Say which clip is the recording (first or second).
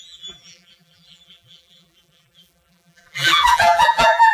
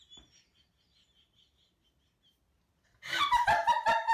second